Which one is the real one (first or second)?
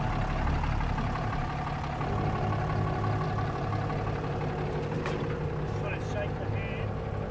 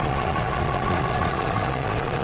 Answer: first